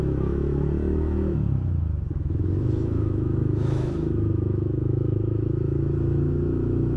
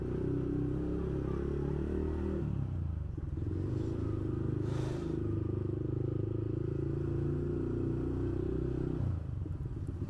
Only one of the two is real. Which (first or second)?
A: second